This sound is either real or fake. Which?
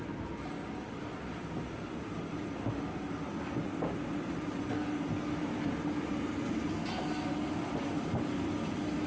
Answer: real